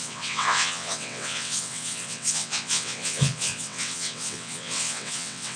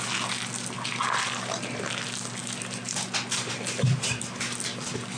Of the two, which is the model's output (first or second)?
first